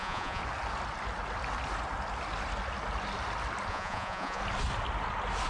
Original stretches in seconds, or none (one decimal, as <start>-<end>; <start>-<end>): 0.4-3.7; 4.4-5.5